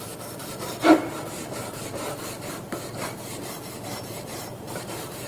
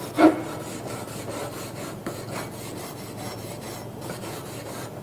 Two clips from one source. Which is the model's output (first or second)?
first